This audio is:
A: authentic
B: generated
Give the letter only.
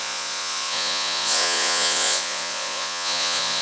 B